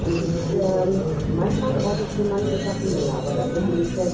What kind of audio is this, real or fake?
real